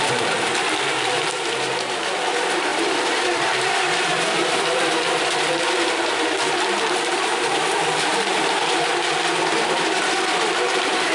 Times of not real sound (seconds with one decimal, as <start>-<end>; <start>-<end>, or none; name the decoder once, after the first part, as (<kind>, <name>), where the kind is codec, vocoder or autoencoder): 0.0-8.1 (vocoder, BigVGAN v2); 9.3-11.1